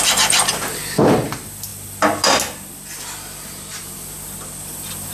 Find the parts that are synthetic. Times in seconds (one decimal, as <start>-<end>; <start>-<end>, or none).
none